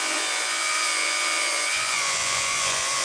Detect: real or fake fake